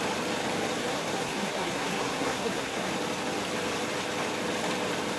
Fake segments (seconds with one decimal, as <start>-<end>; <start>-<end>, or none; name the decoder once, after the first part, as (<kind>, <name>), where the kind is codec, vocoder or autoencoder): 0.8-2.9 (codec, SNAC)

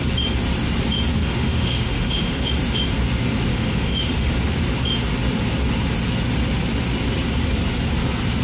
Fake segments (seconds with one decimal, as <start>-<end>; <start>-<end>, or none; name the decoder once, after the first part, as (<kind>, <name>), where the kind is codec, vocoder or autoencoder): 1.2-2.5 (autoencoder, DAC-VAE); 3.5-4.3

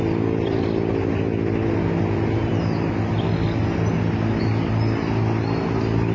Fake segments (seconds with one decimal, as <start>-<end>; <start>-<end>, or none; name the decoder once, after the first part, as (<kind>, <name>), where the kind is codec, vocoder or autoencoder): none

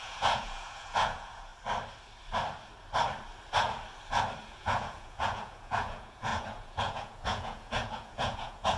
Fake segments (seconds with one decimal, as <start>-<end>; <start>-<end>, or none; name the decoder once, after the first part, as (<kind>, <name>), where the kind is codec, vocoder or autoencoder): 0.0-1.5 (vocoder, Vocos); 4.4-8.8

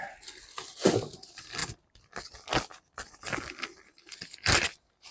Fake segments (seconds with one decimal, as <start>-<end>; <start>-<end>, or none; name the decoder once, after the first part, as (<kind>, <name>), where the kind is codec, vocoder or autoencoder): none

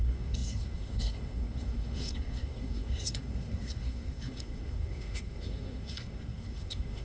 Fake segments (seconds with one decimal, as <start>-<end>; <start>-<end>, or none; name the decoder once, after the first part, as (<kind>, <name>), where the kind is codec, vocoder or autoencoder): 0.0-7.0 (codec, SNAC)

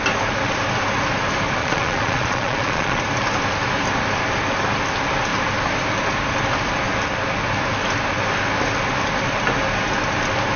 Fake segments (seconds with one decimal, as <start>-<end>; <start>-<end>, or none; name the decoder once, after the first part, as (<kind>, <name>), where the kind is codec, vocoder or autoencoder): 1.6-3.0 (vocoder, Vocos)

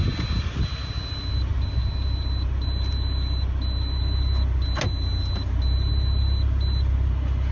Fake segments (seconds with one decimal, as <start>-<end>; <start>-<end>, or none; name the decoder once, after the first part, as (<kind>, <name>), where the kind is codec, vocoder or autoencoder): none